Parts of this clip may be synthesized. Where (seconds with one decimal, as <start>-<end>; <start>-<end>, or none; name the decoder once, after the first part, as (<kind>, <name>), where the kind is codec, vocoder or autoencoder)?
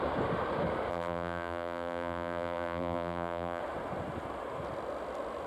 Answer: 0.9-3.6 (vocoder, BigVGAN v2)